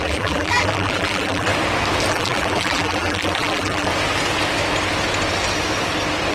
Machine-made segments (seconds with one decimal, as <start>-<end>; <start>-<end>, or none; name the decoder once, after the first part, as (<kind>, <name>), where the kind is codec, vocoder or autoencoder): 0.0-1.5 (vocoder, BigVGAN v2); 2.1-3.9